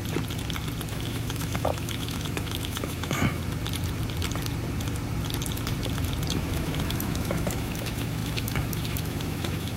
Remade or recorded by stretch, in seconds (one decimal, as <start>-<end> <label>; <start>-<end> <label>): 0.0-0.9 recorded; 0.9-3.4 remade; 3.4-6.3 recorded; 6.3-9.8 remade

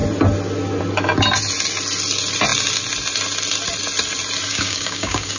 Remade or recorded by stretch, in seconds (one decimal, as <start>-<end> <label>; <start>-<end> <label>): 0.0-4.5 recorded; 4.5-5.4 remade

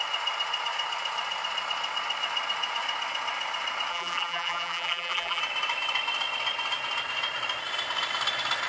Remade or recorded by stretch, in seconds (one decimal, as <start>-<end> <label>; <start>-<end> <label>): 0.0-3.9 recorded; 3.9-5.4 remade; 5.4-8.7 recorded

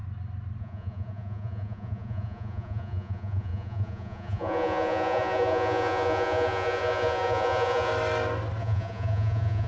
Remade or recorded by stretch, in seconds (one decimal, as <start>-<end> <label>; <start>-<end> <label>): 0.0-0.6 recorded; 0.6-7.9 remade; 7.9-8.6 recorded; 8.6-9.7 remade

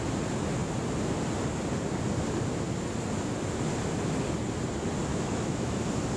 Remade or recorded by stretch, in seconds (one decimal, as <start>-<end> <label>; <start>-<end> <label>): 0.0-5.1 recorded; 5.1-5.8 remade; 5.8-6.2 recorded